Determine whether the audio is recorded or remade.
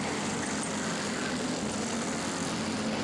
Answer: recorded